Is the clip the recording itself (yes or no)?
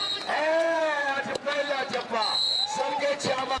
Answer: no